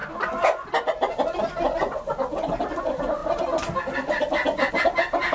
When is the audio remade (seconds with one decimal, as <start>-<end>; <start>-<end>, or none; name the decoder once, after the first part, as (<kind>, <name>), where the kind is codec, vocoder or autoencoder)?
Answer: none